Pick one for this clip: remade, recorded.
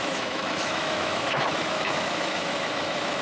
remade